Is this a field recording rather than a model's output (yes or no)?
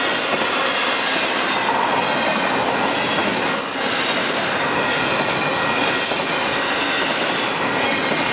yes